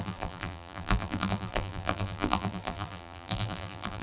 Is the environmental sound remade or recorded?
remade